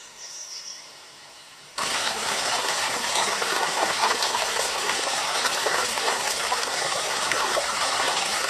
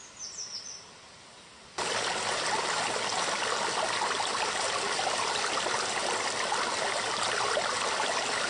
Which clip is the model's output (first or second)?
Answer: first